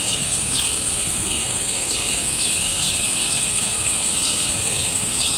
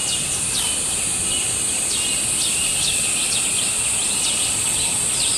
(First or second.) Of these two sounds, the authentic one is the second